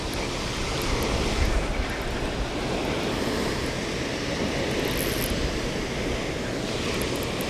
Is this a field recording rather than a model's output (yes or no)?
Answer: yes